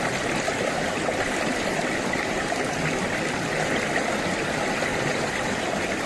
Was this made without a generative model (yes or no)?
no